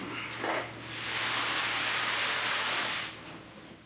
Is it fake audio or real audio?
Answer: real